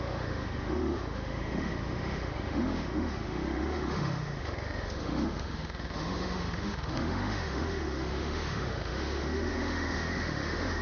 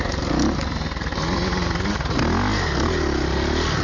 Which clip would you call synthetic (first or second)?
first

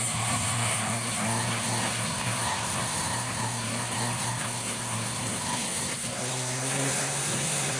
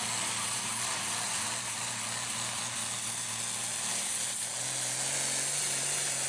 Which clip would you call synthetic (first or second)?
first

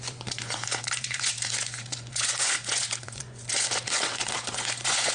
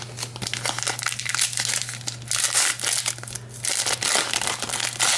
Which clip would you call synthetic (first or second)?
first